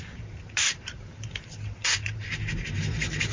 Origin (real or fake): fake